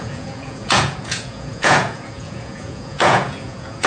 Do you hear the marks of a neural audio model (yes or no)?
yes